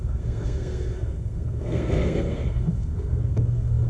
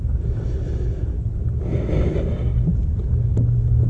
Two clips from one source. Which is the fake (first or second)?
first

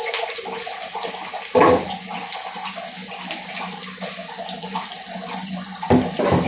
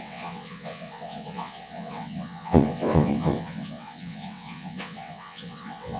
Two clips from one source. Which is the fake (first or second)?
second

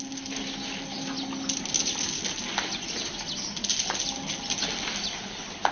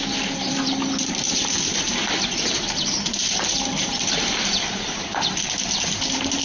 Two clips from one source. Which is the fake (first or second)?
second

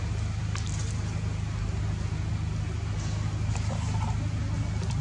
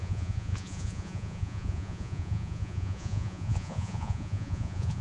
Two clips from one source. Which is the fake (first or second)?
second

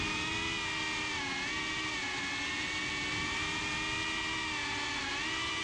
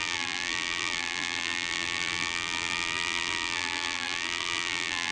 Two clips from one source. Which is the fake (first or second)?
second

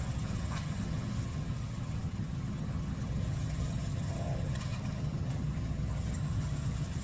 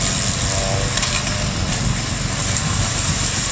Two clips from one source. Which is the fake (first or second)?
first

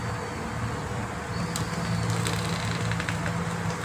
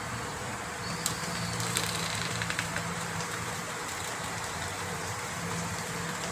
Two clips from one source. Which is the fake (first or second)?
second